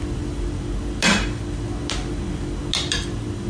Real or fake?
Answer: real